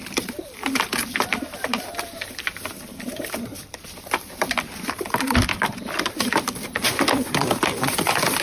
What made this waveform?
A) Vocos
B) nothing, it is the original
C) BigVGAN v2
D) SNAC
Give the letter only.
C